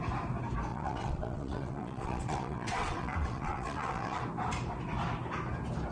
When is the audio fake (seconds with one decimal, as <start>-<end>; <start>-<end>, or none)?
0.7-4.2